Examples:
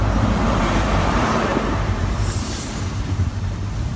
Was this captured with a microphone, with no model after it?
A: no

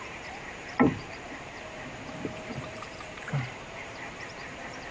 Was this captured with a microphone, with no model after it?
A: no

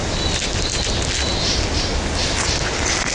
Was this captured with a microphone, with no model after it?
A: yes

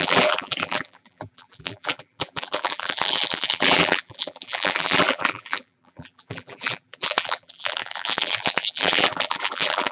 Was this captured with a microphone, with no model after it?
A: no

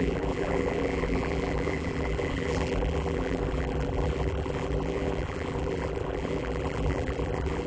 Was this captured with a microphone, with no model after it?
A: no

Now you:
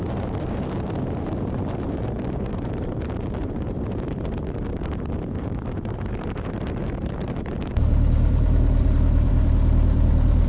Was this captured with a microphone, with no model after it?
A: no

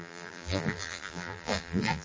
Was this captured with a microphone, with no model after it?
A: no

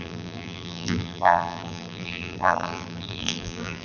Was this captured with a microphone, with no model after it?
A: no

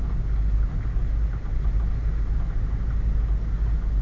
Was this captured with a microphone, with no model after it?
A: yes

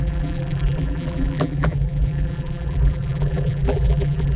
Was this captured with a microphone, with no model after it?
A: no